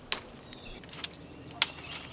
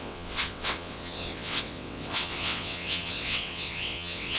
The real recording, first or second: first